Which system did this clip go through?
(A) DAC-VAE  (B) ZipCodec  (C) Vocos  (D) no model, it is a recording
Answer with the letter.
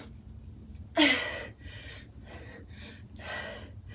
D